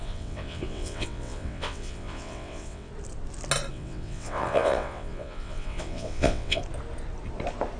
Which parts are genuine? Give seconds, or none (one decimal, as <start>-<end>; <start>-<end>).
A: 2.9-3.7; 6.6-7.8